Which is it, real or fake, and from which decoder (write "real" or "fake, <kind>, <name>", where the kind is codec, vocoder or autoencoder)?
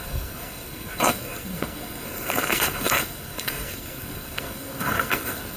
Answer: fake, codec, SNAC